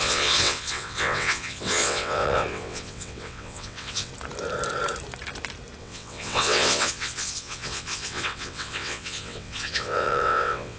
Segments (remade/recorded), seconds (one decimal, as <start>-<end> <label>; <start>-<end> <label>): 0.0-4.1 remade; 4.1-5.8 recorded; 5.8-10.8 remade